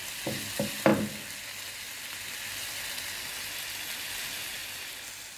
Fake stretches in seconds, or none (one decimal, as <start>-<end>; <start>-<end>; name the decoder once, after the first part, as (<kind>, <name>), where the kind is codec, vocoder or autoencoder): none